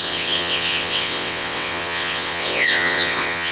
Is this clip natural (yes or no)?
no